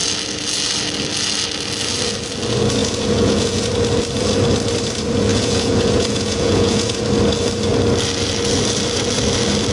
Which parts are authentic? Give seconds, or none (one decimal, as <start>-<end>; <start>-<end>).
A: 0.0-2.8; 3.6-5.3; 7.0-9.7

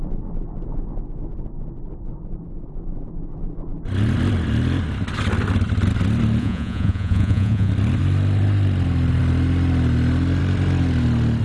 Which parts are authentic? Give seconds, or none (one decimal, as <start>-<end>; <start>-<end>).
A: 0.0-6.4; 7.7-11.4